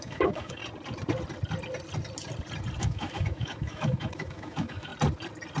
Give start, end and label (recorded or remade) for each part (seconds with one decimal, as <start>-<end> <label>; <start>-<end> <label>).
0.0-0.6 remade; 0.6-2.8 recorded; 2.8-4.9 remade; 4.9-5.6 recorded